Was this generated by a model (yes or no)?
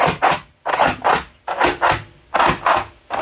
no